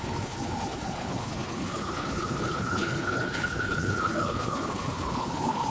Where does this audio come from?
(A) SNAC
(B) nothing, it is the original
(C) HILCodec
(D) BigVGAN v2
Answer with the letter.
C